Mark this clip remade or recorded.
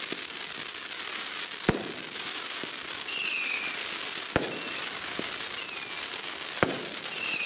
recorded